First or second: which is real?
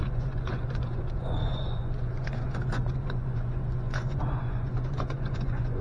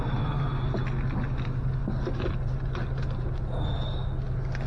second